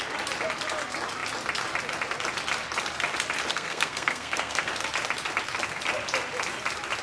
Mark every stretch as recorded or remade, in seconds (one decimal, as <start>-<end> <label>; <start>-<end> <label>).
0.0-3.5 recorded; 3.5-4.7 remade; 4.7-7.0 recorded